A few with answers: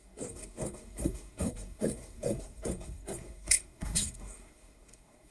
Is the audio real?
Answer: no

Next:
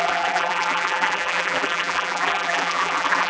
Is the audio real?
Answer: no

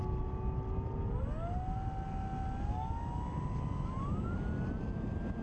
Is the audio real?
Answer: yes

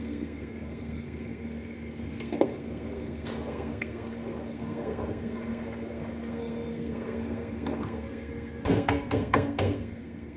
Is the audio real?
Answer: no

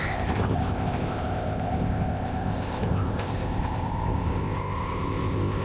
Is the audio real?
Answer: no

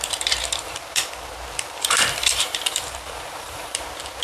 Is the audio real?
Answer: no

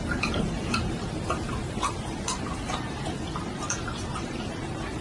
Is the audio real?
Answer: no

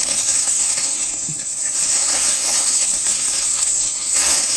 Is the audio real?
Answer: no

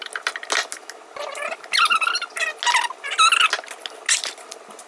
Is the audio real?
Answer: yes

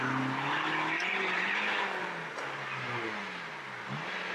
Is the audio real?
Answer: yes